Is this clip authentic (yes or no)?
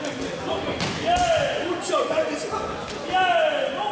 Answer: yes